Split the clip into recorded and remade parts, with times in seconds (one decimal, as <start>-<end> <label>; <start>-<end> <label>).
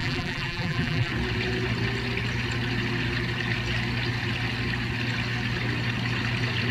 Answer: 0.0-1.1 remade; 1.1-6.7 recorded